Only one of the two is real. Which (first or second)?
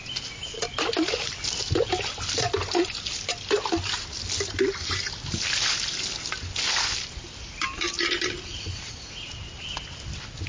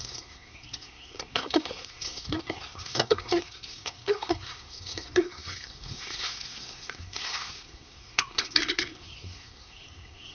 first